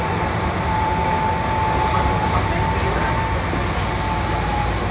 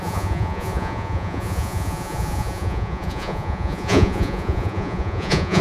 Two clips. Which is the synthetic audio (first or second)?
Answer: second